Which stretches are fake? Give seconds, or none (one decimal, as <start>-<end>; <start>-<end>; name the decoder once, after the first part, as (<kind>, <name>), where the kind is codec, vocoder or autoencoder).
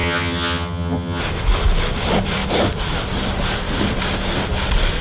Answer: 0.0-1.2 (vocoder, HiFi-GAN)